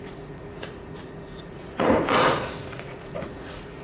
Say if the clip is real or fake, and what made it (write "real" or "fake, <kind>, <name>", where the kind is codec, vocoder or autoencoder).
fake, vocoder, Vocos